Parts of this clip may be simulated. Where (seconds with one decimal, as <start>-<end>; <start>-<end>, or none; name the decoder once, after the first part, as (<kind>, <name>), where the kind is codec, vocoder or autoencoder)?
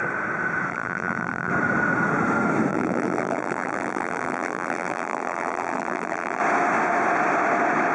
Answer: 0.7-1.5 (vocoder, BigVGAN v2); 2.7-6.4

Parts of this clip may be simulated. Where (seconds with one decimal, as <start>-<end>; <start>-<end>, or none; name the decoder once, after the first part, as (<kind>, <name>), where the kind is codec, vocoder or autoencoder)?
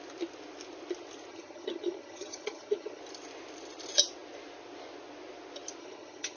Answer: 1.3-3.0 (vocoder, HiFi-GAN); 5.8-6.4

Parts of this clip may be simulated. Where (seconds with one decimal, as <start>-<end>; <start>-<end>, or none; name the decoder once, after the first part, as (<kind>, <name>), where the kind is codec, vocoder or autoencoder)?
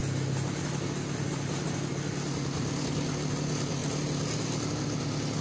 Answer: none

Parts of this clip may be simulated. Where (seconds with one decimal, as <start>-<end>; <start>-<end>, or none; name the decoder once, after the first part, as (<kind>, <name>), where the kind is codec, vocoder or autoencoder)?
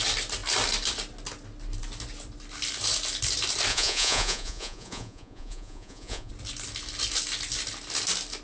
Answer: 3.7-6.3 (vocoder, Vocos)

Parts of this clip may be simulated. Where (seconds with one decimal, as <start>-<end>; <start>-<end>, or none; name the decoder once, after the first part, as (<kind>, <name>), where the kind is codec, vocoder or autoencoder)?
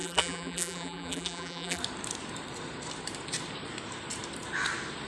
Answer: 0.0-1.8 (vocoder, BigVGAN v2)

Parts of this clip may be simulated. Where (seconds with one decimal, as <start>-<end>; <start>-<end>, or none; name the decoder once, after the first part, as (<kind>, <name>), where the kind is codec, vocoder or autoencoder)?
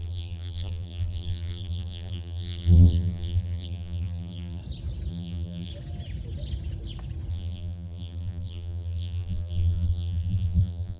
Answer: 0.0-4.6 (vocoder, BigVGAN v2); 5.1-5.7; 7.3-11.0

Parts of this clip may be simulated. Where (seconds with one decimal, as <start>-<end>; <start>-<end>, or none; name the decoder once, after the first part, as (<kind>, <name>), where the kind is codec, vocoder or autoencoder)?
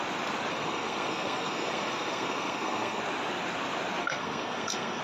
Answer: 0.5-3.0 (codec, SNAC); 4.0-5.0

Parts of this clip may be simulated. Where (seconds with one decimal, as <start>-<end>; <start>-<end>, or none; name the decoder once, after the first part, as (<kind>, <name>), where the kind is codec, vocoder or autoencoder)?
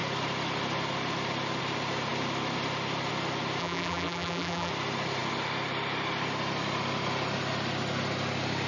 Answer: 3.6-4.7 (vocoder, BigVGAN v2)